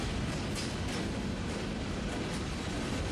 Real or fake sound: real